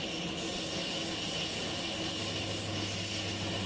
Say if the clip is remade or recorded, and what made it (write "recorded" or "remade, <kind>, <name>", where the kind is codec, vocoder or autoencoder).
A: recorded